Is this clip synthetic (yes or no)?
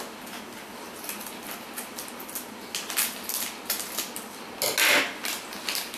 no